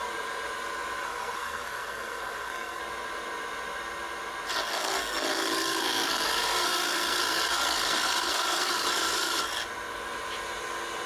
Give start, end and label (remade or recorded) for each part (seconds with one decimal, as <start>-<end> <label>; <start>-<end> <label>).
0.0-1.0 recorded; 1.0-2.8 remade; 2.8-4.7 recorded; 4.7-9.4 remade; 9.4-11.1 recorded